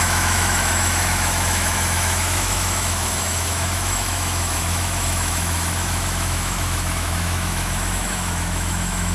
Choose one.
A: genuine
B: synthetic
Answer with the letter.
B